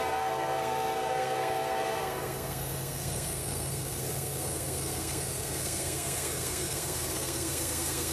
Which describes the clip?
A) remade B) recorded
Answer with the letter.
A